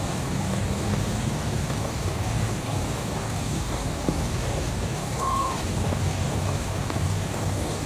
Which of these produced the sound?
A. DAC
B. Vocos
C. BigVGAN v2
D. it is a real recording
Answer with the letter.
A